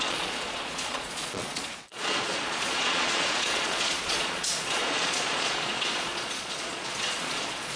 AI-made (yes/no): yes